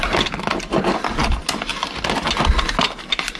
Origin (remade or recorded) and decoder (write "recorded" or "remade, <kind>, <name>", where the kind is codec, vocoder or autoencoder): recorded